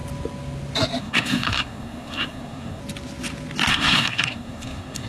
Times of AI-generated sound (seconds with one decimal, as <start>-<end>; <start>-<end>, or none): 1.0-2.8; 3.7-5.1